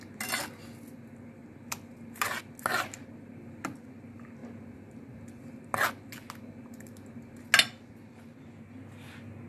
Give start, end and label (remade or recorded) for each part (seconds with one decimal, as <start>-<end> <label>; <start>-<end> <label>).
0.0-9.5 recorded